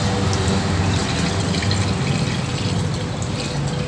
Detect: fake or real real